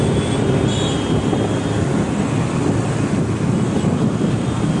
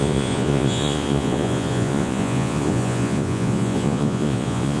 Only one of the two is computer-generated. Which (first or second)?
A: second